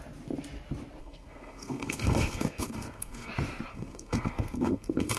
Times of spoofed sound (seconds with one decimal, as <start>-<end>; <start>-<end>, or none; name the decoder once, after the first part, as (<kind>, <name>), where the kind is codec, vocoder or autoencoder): 1.0-3.3 (codec, SNAC); 3.7-5.2